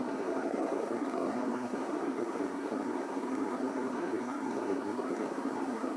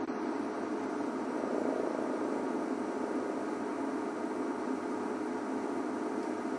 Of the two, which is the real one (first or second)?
second